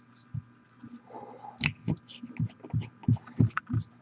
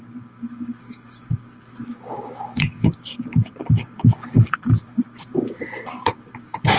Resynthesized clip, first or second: second